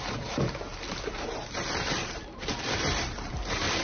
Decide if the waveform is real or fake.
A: fake